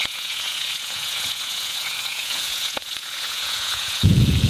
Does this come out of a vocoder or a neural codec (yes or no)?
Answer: yes